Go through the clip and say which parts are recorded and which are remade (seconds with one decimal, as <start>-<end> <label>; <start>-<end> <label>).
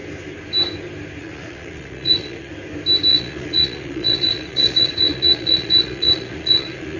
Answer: 0.0-1.2 recorded; 1.2-2.5 remade; 2.5-3.1 recorded; 3.1-7.0 remade